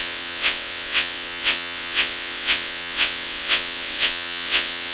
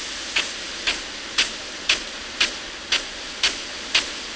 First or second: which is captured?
second